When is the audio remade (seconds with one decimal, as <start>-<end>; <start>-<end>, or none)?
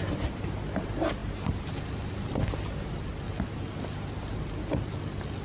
none